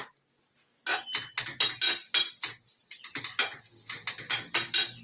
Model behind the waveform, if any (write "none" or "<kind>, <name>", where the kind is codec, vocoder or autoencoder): none